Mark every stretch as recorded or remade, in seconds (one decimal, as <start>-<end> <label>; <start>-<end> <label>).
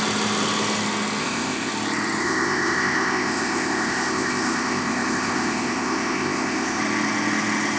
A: 0.0-1.2 recorded; 1.2-1.7 remade; 1.7-2.2 recorded; 2.2-6.8 remade; 6.8-7.8 recorded